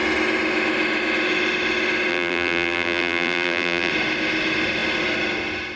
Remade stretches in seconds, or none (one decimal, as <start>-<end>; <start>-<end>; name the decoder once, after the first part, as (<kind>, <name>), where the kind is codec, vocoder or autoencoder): 2.1-3.9 (vocoder, BigVGAN v2)